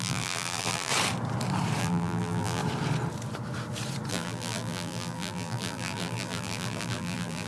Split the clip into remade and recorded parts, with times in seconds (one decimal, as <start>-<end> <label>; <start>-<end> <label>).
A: 0.0-0.9 remade; 0.9-1.8 recorded; 1.8-2.6 remade; 2.6-4.1 recorded; 4.1-7.5 remade